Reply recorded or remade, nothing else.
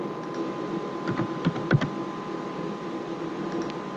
recorded